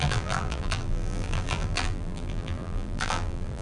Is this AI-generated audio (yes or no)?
yes